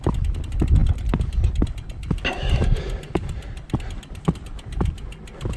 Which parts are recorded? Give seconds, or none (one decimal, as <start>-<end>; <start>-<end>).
0.0-5.6

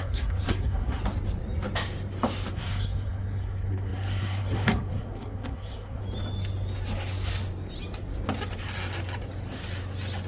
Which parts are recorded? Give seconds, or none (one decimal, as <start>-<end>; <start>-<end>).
1.0-2.5; 6.0-10.3